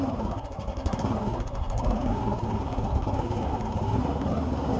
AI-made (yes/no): yes